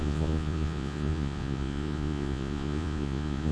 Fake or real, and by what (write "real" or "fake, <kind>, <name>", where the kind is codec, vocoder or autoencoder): fake, vocoder, Vocos